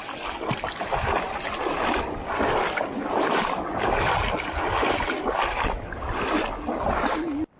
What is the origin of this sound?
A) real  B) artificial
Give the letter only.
A